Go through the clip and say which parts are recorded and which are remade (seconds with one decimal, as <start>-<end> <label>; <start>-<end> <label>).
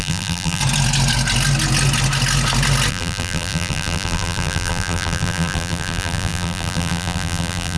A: 0.0-0.6 remade; 0.6-2.9 recorded; 2.9-7.8 remade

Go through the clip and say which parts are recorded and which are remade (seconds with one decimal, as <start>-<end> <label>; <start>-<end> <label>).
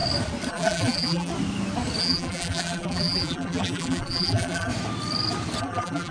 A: 0.0-0.5 recorded; 0.5-1.3 remade; 1.3-2.0 recorded; 2.0-4.7 remade; 4.7-5.6 recorded; 5.6-6.1 remade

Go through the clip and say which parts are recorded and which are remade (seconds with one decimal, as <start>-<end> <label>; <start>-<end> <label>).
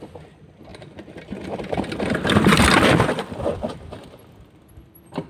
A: 0.0-0.7 recorded; 0.7-3.9 remade; 3.9-5.3 recorded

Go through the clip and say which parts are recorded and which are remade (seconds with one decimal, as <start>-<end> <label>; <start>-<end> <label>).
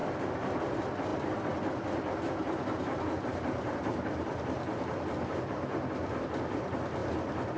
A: 0.0-0.6 recorded; 0.6-1.1 remade; 1.1-3.2 recorded; 3.2-7.6 remade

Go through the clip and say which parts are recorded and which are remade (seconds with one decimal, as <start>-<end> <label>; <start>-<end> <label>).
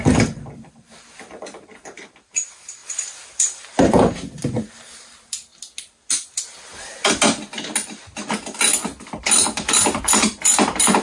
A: 0.0-5.5 remade; 5.5-9.2 recorded; 9.2-11.0 remade